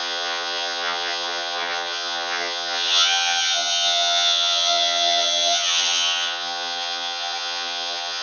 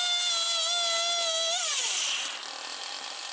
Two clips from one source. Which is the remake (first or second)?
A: first